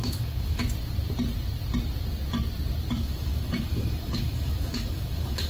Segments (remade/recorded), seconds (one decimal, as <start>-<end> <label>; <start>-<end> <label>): 0.0-0.6 remade; 0.6-2.9 recorded; 2.9-5.5 remade